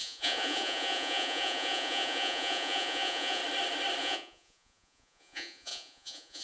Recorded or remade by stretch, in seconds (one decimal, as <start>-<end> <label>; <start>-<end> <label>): 0.0-3.4 remade; 3.4-4.0 recorded; 4.0-6.4 remade